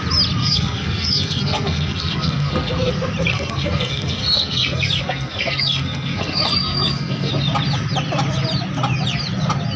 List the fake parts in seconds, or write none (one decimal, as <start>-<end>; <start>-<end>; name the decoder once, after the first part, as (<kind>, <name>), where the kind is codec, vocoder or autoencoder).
0.4-2.9 (codec, SNAC); 3.3-7.3